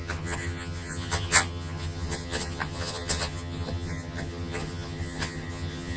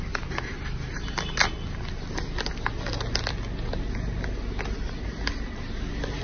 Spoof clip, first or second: first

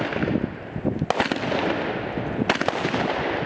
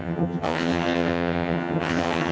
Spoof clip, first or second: second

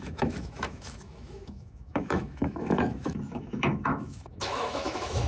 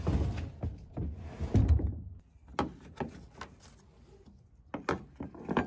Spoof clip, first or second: first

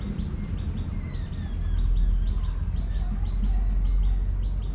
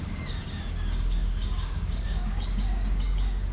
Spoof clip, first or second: second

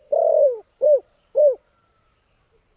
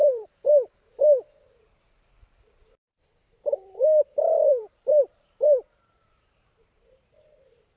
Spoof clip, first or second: second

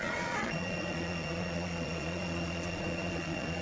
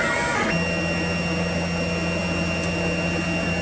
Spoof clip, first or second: first